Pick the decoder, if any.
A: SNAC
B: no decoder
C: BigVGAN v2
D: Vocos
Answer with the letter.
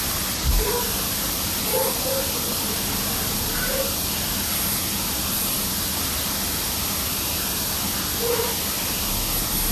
B